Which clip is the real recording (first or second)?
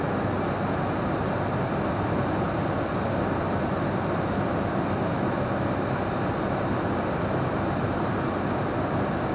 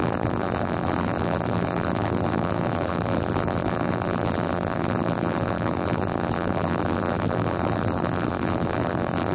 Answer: first